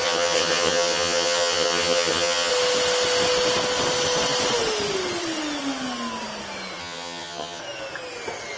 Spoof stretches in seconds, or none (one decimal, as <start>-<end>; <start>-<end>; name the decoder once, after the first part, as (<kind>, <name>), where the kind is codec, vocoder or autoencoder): 0.0-2.5 (vocoder, HiFi-GAN); 6.8-7.6